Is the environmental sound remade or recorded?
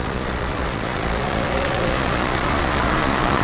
remade